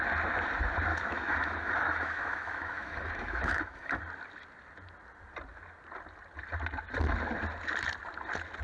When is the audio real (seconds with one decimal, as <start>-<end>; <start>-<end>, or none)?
0.0-0.9; 4.0-8.6